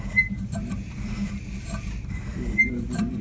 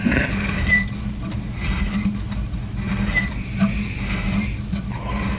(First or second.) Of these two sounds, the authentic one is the second